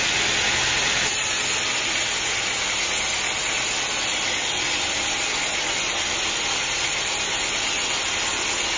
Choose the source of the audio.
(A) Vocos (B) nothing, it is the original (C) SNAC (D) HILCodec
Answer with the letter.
B